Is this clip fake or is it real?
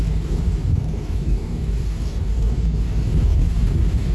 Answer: fake